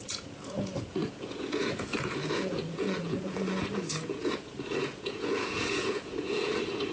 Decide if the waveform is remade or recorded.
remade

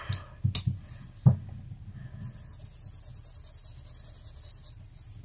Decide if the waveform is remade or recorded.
recorded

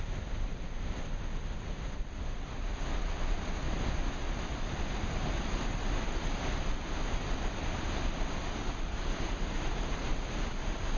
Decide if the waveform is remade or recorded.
recorded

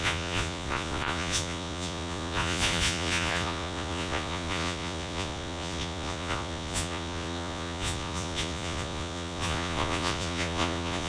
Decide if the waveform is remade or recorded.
remade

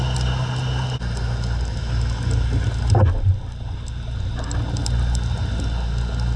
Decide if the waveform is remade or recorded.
recorded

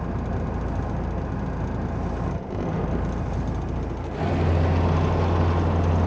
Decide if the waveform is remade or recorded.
recorded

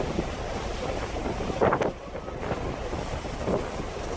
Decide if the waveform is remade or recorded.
recorded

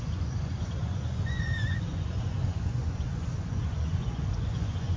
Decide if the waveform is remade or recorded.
remade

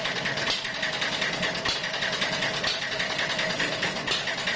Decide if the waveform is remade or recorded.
recorded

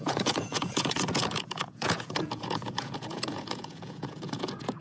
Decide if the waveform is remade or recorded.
remade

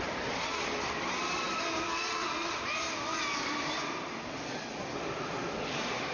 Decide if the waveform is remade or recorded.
recorded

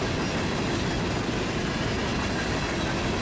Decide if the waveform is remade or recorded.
recorded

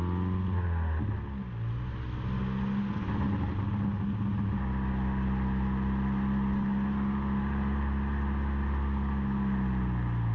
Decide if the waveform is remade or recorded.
recorded